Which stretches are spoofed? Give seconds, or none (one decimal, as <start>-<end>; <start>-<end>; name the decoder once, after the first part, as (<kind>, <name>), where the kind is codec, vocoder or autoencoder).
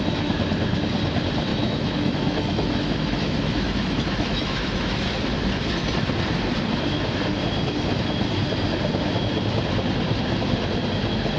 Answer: 1.5-5.2 (autoencoder, DAC-VAE)